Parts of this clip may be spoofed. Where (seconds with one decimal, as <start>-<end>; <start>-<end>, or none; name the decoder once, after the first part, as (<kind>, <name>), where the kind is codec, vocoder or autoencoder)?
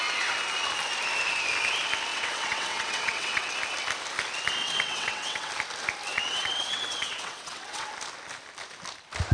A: 2.1-3.5 (vocoder, WaveNeXt); 4.6-5.5; 6.1-7.9